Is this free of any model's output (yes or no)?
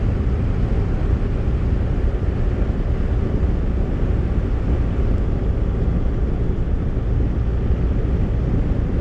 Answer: yes